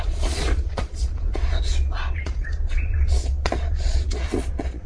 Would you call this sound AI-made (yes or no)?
yes